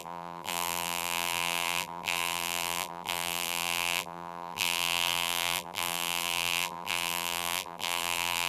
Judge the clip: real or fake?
fake